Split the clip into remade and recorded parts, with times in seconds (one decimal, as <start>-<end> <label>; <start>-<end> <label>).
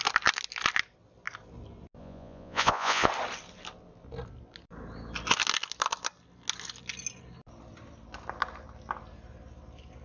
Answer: 0.0-2.0 recorded; 2.0-3.1 remade; 3.1-10.0 recorded